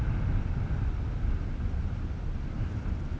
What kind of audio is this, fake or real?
real